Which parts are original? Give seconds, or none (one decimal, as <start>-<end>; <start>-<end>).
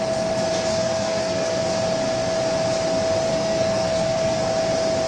0.0-0.7; 1.7-3.3; 4.4-5.1